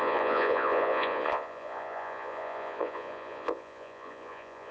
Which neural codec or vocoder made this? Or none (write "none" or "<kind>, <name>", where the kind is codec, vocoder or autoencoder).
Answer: vocoder, Vocos